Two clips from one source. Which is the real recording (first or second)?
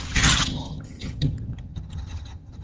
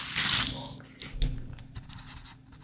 second